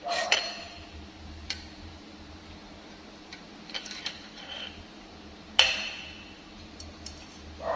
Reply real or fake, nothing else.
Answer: fake